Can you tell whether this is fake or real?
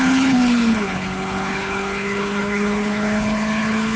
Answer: fake